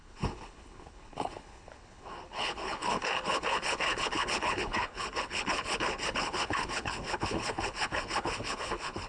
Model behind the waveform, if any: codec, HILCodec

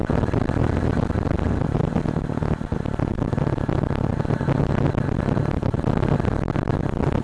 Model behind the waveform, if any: none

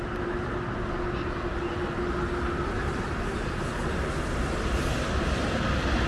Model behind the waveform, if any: none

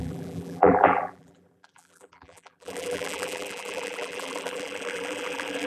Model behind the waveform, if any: vocoder, BigVGAN v2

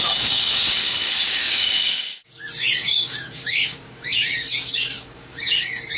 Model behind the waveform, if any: codec, DAC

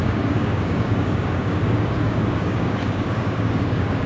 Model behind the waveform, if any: codec, DAC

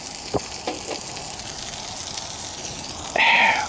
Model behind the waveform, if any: none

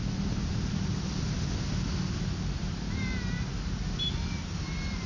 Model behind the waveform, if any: none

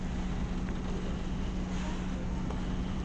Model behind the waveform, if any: none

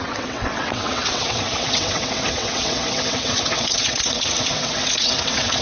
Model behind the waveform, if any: vocoder, WaveNeXt